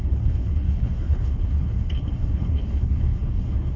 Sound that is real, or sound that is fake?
fake